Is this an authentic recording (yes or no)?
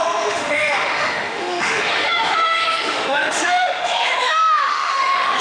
no